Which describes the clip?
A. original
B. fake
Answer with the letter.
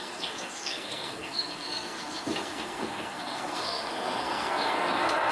B